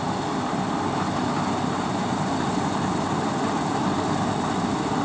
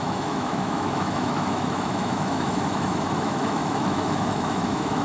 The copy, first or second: second